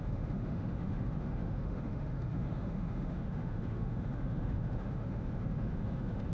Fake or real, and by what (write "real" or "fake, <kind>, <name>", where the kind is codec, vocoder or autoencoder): fake, autoencoder, DAC-VAE